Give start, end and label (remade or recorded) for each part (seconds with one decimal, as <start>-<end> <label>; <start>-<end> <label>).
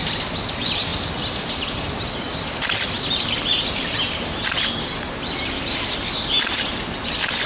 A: 0.0-7.5 recorded